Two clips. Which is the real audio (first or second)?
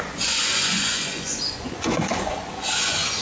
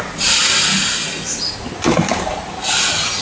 second